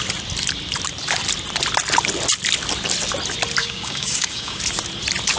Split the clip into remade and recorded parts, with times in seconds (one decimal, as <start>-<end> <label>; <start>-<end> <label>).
0.0-3.6 recorded; 3.6-4.6 remade; 4.6-5.4 recorded